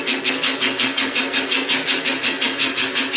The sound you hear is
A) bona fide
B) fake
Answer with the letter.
B